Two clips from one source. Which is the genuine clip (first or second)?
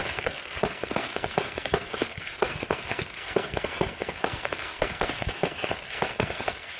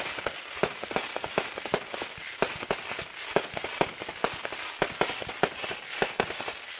second